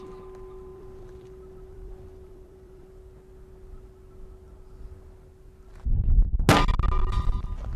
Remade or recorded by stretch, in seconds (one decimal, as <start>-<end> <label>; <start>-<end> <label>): 0.0-0.7 recorded; 0.7-2.9 remade; 2.9-7.8 recorded